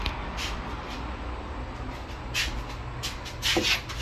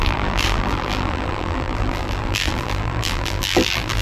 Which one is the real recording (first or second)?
first